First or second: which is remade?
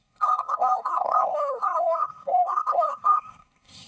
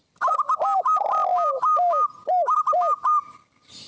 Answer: first